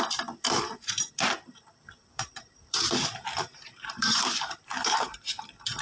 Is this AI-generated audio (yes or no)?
yes